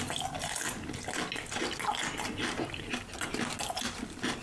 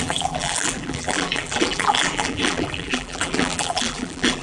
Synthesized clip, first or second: second